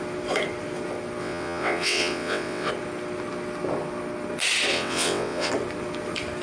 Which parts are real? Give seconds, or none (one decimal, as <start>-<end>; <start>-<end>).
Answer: 0.0-1.2; 2.7-4.7; 5.5-6.4